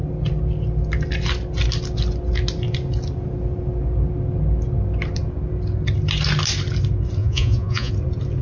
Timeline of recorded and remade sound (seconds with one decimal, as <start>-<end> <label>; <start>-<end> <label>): 0.0-7.2 recorded; 7.2-7.9 remade; 7.9-8.4 recorded